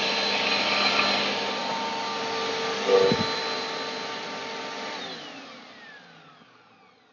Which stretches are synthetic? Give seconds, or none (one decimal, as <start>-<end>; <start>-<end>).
none